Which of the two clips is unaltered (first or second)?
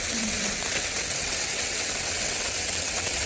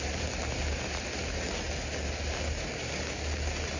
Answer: second